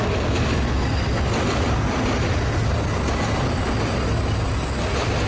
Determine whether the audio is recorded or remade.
recorded